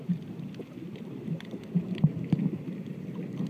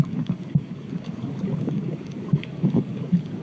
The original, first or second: first